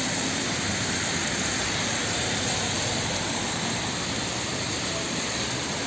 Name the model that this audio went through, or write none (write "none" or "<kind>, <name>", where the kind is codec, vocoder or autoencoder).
vocoder, BigVGAN v2